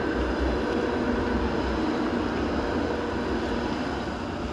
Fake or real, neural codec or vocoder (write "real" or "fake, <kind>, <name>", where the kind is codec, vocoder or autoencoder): real